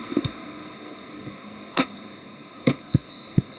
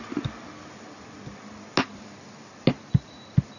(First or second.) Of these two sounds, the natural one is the second